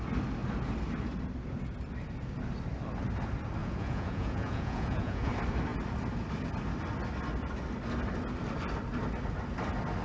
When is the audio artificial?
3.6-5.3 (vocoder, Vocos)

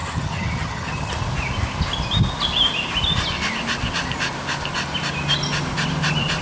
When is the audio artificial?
0.0-1.1 (vocoder, HiFi-GAN)